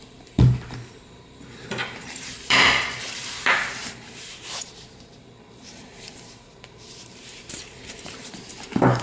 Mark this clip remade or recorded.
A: remade